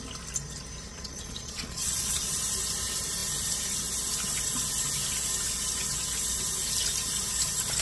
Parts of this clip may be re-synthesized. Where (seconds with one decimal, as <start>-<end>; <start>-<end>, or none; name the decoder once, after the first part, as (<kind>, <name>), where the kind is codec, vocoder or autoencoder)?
0.9-2.3 (vocoder, Vocos)